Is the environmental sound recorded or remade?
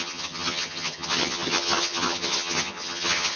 remade